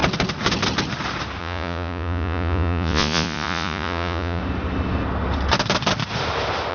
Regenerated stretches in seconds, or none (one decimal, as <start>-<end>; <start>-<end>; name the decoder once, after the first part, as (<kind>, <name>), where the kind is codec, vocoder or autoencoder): 1.4-4.4 (vocoder, Vocos)